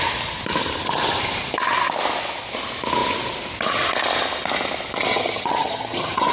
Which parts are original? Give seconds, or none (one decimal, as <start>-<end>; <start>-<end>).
0.0-5.1